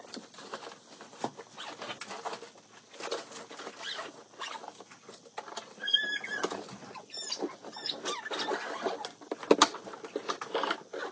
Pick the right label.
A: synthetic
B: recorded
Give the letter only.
B